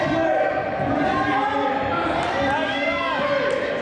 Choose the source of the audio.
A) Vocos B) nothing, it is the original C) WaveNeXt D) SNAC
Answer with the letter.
B